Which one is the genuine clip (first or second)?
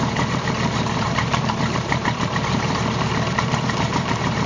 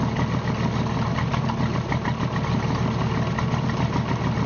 second